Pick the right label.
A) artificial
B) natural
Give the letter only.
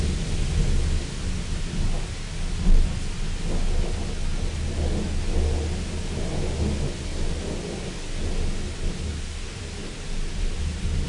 B